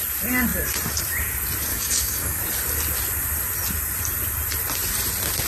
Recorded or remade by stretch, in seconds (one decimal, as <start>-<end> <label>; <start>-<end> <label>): 0.0-1.7 recorded; 1.7-2.4 remade; 2.4-5.5 recorded